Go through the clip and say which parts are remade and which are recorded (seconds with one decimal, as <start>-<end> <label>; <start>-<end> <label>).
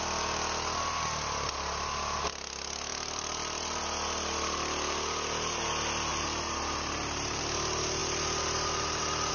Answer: 0.0-2.9 recorded; 2.9-3.8 remade; 3.8-6.1 recorded; 6.1-7.4 remade; 7.4-8.0 recorded; 8.0-9.3 remade